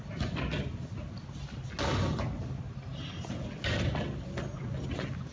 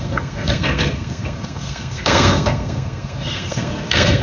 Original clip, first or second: first